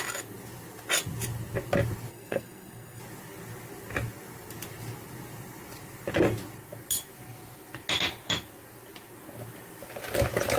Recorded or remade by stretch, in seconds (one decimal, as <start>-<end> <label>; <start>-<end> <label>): 0.0-2.1 recorded; 2.1-3.0 remade; 3.0-10.6 recorded